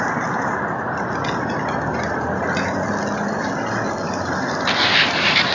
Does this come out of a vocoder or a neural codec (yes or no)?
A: no